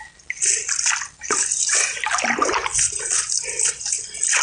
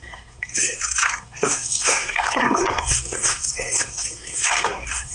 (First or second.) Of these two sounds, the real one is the first